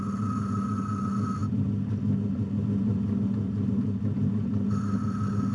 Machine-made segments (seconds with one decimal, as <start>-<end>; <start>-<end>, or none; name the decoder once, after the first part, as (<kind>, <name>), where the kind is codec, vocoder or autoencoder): none